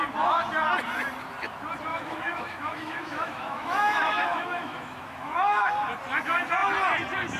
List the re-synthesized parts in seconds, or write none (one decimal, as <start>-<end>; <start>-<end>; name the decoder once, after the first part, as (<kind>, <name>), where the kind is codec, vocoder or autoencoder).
1.9-5.7 (autoencoder, DAC-VAE)